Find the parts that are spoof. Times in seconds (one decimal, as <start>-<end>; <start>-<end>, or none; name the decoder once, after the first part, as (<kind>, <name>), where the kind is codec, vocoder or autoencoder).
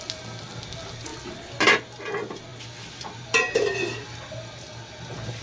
none